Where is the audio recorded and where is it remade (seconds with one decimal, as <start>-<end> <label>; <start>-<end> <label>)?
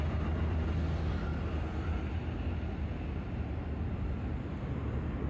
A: 0.0-5.3 recorded